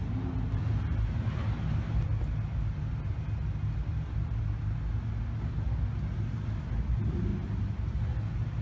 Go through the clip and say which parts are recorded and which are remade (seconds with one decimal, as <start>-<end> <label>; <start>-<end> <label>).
0.0-8.6 recorded